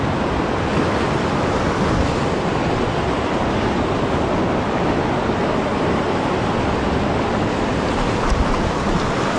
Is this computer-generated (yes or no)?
no